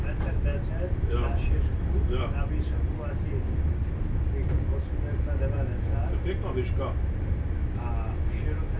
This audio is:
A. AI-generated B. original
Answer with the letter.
B